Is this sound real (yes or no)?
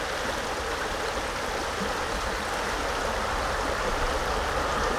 yes